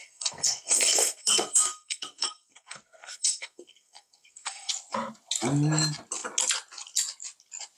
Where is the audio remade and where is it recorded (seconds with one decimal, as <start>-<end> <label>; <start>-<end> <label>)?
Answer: 0.0-4.7 remade; 4.7-7.8 recorded